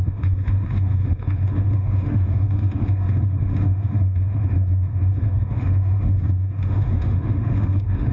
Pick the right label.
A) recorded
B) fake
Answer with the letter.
B